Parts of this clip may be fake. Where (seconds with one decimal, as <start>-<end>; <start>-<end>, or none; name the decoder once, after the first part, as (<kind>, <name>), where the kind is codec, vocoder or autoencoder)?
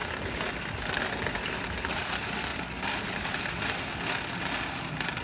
2.5-3.4 (vocoder, BigVGAN v2)